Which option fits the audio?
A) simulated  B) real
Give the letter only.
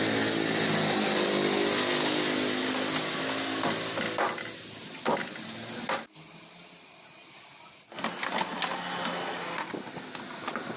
B